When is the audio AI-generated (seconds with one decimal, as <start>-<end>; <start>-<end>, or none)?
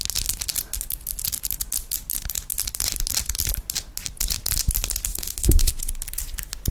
5.1-5.7